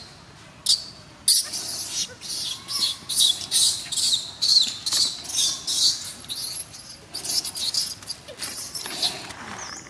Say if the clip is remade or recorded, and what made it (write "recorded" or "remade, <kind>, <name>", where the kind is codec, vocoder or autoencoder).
recorded